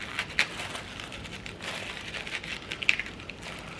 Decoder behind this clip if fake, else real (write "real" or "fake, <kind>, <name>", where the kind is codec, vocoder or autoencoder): real